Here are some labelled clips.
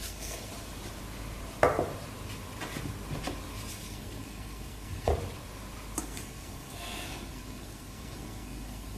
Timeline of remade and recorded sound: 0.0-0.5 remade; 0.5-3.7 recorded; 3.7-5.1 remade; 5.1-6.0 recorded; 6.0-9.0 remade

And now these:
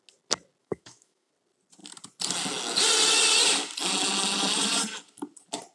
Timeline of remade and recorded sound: 0.0-0.6 recorded; 0.6-1.3 remade; 1.3-5.7 recorded

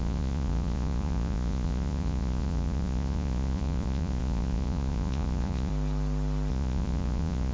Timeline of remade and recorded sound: 0.0-5.7 remade; 5.7-6.5 recorded; 6.5-7.5 remade

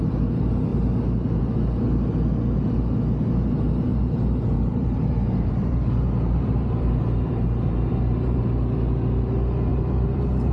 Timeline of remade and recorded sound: 0.0-3.9 recorded; 3.9-8.4 remade; 8.4-9.7 recorded; 9.7-10.5 remade

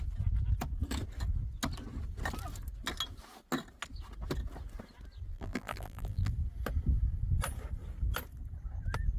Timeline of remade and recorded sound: 0.0-5.3 recorded; 5.3-6.3 remade; 6.3-9.2 recorded

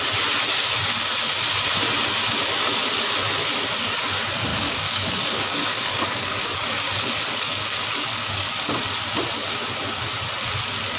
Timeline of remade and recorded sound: 0.0-4.5 recorded; 4.5-8.7 remade; 8.7-11.0 recorded

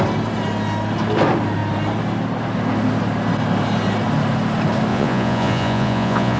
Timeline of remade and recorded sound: 0.0-4.9 recorded; 4.9-6.4 remade